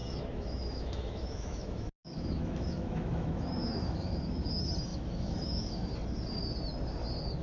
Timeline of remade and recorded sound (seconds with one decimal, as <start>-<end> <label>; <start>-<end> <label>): 0.0-4.4 remade; 4.4-4.9 recorded; 4.9-5.9 remade; 5.9-7.4 recorded